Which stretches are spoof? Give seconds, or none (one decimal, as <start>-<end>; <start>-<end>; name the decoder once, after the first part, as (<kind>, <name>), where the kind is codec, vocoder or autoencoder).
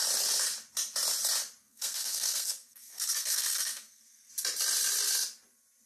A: 1.6-4.3 (codec, SNAC)